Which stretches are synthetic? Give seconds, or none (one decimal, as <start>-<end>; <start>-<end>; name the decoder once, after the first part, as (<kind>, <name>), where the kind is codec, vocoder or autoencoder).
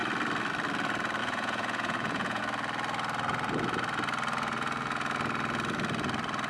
1.2-2.4 (vocoder, Vocos)